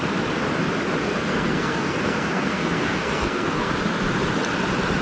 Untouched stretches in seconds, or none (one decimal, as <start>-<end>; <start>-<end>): 0.0-1.0; 3.7-5.0